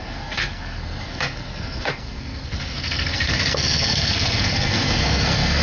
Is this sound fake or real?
fake